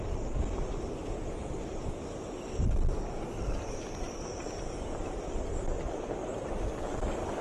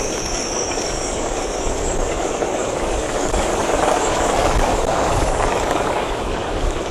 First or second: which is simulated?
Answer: second